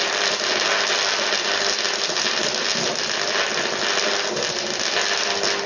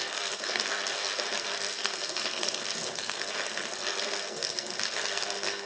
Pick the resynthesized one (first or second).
second